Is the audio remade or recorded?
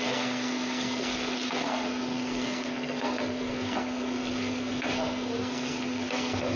remade